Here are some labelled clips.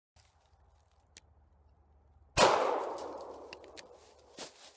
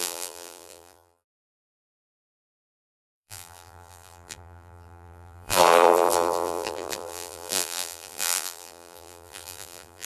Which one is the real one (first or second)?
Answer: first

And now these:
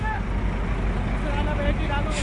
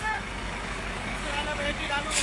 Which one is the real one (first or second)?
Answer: first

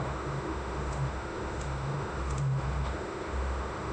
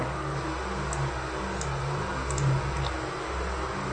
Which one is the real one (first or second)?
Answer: second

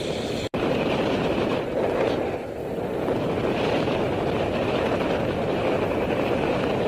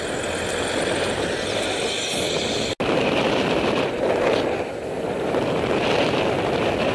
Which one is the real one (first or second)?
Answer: second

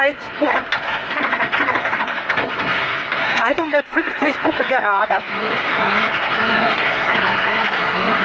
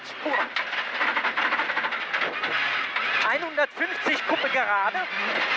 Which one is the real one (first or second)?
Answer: second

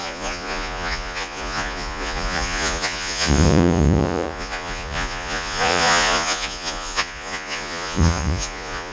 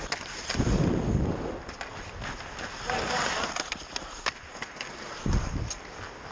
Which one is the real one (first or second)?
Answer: second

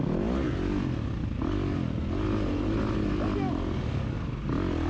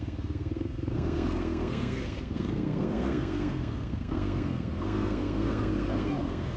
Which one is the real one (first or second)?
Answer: first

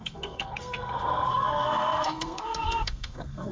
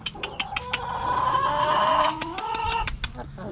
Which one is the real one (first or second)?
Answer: second